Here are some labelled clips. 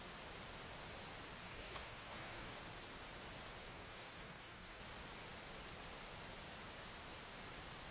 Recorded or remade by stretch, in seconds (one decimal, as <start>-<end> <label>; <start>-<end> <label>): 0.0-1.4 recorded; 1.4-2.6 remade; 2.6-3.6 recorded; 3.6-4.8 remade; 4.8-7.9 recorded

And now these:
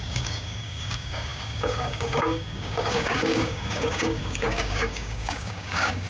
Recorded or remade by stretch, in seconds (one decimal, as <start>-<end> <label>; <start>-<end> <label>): 0.0-6.1 remade

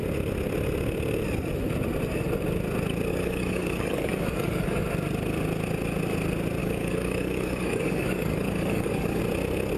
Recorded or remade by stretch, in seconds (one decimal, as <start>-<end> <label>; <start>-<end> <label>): 0.0-3.1 recorded; 3.1-4.8 remade; 4.8-6.6 recorded; 6.6-9.2 remade; 9.2-9.8 recorded

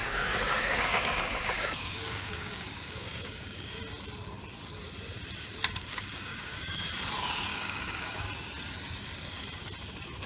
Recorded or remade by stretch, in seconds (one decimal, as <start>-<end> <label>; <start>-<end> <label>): 0.0-3.8 remade; 3.8-5.8 recorded; 5.8-6.9 remade; 6.9-7.5 recorded; 7.5-8.3 remade; 8.3-10.3 recorded

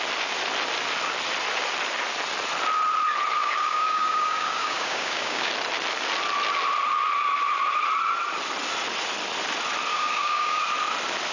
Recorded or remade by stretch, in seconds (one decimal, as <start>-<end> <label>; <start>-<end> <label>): 0.0-3.4 recorded; 3.4-5.5 remade; 5.5-9.9 recorded; 9.9-10.6 remade; 10.6-11.3 recorded